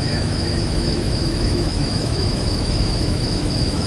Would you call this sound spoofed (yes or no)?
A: yes